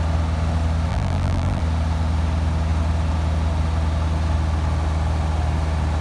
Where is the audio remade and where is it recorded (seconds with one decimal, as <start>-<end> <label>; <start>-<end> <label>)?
0.0-0.9 recorded; 0.9-1.6 remade; 1.6-6.0 recorded